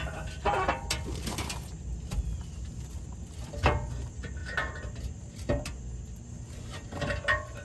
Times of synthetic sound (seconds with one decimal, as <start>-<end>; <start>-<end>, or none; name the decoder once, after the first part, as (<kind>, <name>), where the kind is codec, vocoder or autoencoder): none

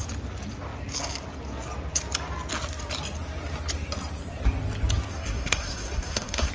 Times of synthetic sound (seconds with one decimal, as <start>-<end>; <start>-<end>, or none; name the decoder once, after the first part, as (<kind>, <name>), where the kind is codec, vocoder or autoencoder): 5.1-6.5 (codec, SNAC)

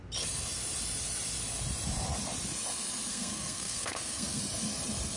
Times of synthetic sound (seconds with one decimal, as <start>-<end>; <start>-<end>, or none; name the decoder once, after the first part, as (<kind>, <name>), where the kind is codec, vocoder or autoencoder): 3.1-4.4 (codec, SNAC)

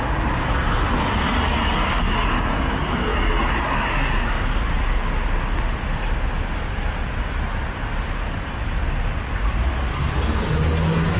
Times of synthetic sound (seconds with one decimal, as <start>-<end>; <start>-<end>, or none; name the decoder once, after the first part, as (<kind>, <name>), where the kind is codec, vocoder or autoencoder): none